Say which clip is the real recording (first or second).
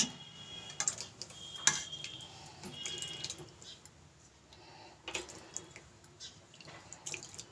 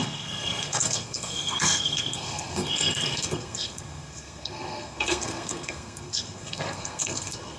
first